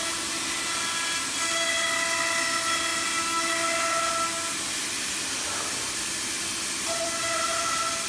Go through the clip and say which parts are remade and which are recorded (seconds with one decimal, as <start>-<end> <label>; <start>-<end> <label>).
0.0-8.1 recorded